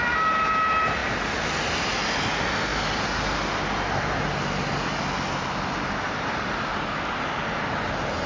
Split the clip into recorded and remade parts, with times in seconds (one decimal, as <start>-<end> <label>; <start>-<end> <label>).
0.0-8.3 recorded